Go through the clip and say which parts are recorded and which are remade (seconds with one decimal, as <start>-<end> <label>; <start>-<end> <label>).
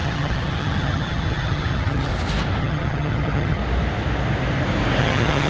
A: 0.0-2.1 remade; 2.1-2.6 recorded; 2.6-3.6 remade; 3.6-5.0 recorded; 5.0-5.5 remade